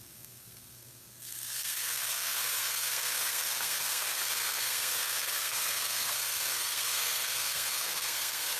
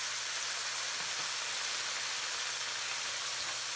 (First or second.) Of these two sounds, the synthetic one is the first